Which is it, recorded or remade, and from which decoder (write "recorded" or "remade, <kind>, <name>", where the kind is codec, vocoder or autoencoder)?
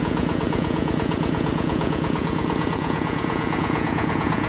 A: remade, vocoder, Vocos